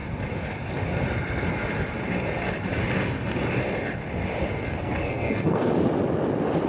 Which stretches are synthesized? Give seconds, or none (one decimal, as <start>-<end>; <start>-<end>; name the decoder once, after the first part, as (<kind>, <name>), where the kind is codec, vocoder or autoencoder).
4.4-5.7 (codec, SNAC)